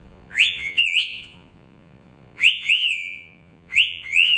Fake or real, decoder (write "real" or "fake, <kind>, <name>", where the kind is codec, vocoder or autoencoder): fake, vocoder, Vocos